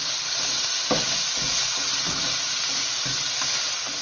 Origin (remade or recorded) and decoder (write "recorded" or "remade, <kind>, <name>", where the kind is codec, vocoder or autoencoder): recorded